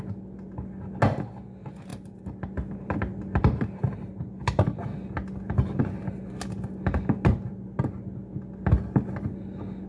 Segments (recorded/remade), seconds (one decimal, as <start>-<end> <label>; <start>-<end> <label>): 0.0-9.9 recorded